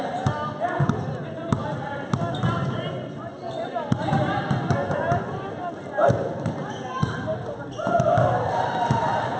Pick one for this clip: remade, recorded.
recorded